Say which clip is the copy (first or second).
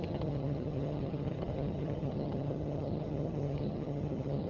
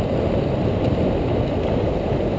first